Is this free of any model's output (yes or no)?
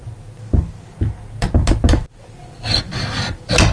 yes